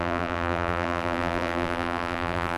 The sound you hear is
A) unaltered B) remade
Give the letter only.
B